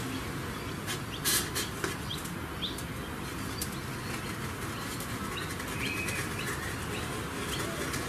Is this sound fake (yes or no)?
no